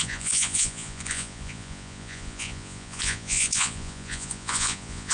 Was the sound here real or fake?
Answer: fake